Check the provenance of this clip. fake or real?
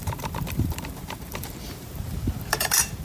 fake